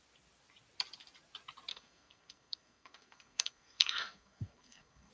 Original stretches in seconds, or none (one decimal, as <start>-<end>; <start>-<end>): 0.0-1.7